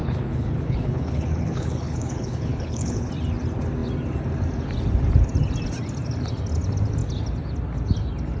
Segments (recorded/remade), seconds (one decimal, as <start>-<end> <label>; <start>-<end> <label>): 0.0-3.1 remade; 3.1-8.4 recorded